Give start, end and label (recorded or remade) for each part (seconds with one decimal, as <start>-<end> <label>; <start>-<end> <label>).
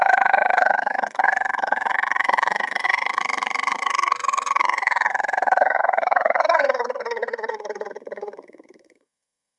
0.0-9.6 remade